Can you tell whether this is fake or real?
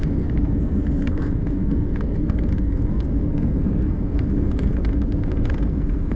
fake